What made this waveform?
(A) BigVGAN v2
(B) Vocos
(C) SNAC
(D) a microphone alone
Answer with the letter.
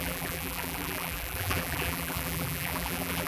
A